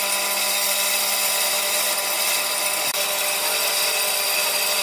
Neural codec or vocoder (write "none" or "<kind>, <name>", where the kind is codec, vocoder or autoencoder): vocoder, BigVGAN v2